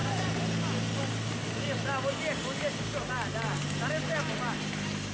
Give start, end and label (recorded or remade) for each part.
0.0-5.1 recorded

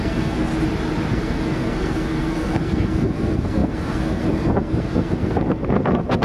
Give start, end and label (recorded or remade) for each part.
0.0-0.5 remade; 0.5-1.1 recorded; 1.1-6.2 remade

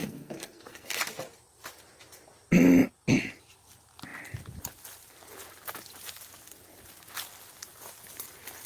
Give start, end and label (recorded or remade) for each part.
0.0-1.0 remade; 1.0-8.7 recorded